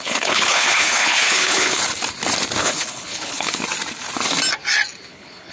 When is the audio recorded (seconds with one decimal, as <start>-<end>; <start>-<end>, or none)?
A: 1.8-2.6; 3.6-5.1